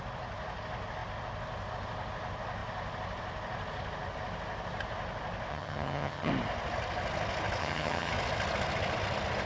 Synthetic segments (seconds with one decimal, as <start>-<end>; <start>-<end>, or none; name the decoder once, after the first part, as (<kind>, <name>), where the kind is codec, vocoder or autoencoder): 5.5-6.3 (vocoder, HiFi-GAN); 7.6-8.1